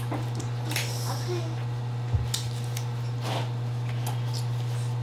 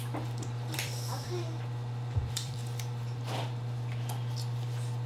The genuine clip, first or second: first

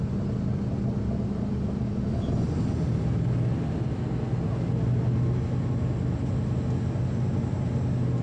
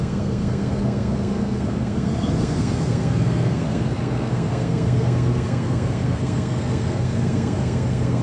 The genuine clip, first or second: first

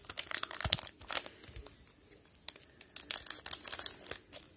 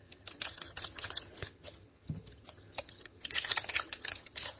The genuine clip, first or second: first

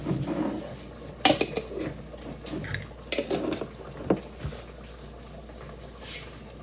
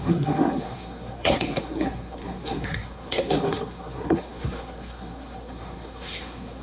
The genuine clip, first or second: first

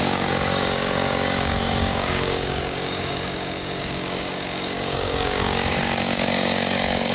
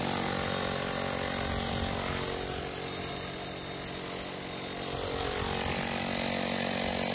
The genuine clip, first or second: second